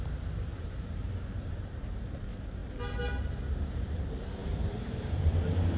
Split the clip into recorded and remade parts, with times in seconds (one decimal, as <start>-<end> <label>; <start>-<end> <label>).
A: 0.0-0.5 recorded; 0.5-1.9 remade; 1.9-4.4 recorded; 4.4-5.2 remade; 5.2-5.8 recorded